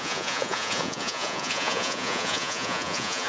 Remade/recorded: remade